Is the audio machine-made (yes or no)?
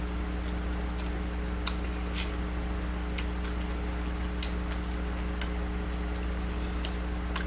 no